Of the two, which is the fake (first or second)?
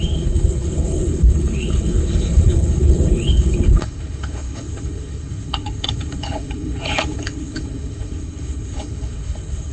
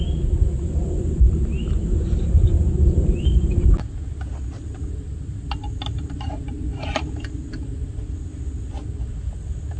first